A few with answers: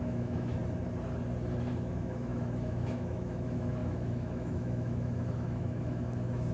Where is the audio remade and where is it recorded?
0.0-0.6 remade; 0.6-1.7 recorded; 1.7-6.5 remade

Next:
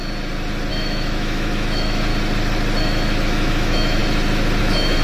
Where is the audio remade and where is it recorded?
0.0-0.7 recorded; 0.7-2.1 remade; 2.1-2.8 recorded; 2.8-4.0 remade; 4.0-4.6 recorded; 4.6-5.0 remade

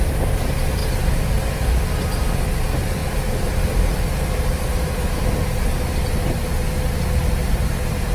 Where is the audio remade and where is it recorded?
0.0-4.7 recorded; 4.7-5.3 remade; 5.3-8.1 recorded

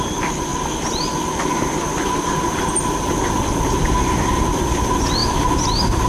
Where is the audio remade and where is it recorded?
0.0-6.1 recorded

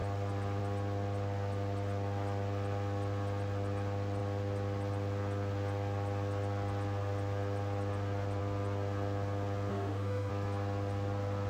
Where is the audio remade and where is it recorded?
0.0-9.7 recorded; 9.7-10.3 remade; 10.3-11.5 recorded

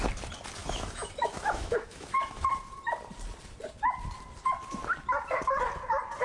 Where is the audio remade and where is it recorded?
0.0-0.6 recorded; 0.6-2.4 remade; 2.4-6.2 recorded

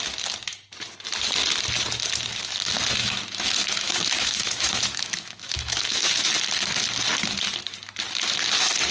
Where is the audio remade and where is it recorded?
0.0-3.0 recorded; 3.0-6.3 remade; 6.3-8.9 recorded